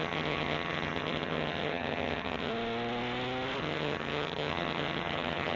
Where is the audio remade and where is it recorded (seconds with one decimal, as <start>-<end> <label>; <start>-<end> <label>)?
0.0-2.5 remade; 2.5-3.6 recorded; 3.6-5.6 remade